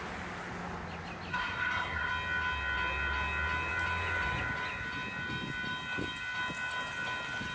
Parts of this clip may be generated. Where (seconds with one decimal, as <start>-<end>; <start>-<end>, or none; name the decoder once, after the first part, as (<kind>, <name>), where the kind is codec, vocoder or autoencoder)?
1.3-2.1 (codec, SNAC)